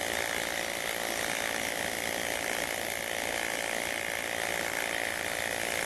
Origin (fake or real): real